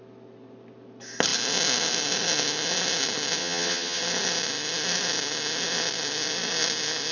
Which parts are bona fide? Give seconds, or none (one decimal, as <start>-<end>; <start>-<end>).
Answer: 0.0-3.4; 4.0-7.1